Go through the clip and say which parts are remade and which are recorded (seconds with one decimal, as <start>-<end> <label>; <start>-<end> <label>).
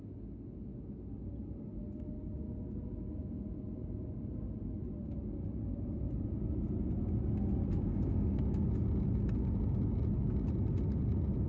0.0-7.9 recorded; 7.9-8.4 remade; 8.4-11.5 recorded